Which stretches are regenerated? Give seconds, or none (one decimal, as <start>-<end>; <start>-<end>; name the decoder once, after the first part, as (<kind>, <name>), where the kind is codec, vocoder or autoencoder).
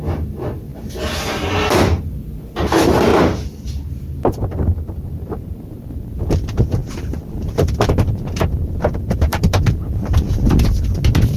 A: 3.1-5.8 (vocoder, BigVGAN v2); 6.8-10.3